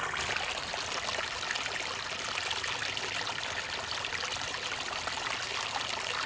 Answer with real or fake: real